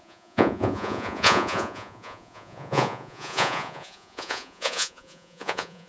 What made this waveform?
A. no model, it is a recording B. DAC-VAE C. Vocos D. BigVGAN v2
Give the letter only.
C